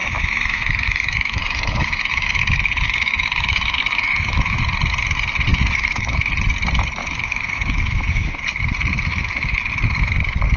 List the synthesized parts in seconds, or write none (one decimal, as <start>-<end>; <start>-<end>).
0.0-4.6; 5.5-6.3; 7.0-8.3; 9.1-9.6